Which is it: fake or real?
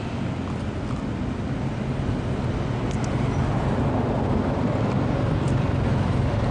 real